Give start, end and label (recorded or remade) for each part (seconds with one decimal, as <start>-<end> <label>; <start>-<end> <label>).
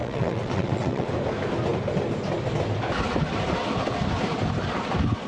0.0-1.1 remade; 1.1-5.3 recorded